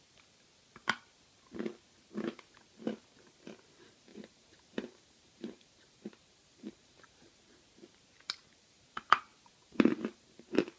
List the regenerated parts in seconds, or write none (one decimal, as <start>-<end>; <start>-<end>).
4.1-7.5; 8.5-9.2; 9.6-10.8

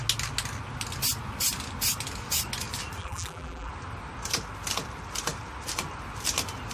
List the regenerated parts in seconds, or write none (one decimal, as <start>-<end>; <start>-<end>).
3.0-3.7